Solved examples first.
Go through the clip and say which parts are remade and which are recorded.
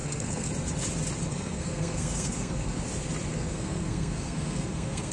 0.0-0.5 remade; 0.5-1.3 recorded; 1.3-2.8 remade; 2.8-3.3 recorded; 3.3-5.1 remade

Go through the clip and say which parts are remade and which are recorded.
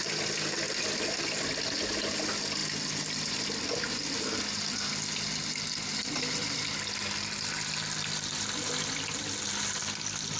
0.0-10.4 recorded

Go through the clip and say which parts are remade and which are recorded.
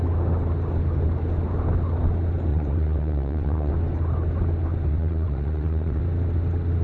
0.0-2.5 recorded; 2.5-3.7 remade; 3.7-4.9 recorded; 4.9-6.0 remade; 6.0-6.8 recorded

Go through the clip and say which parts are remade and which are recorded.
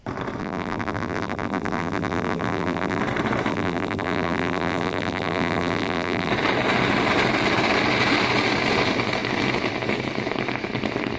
0.0-0.4 recorded; 0.4-3.0 remade; 3.0-3.5 recorded; 3.5-6.3 remade; 6.3-11.2 recorded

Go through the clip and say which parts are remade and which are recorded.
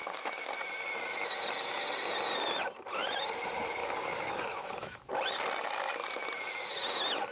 0.0-0.5 remade; 0.5-3.8 recorded; 3.8-5.1 remade; 5.1-7.3 recorded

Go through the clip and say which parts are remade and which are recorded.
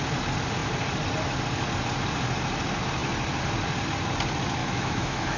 0.0-4.6 recorded; 4.6-5.4 remade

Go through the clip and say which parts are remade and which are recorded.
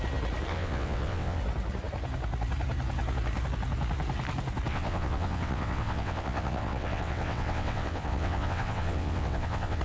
0.0-0.5 recorded; 0.5-1.4 remade; 1.4-4.7 recorded; 4.7-9.8 remade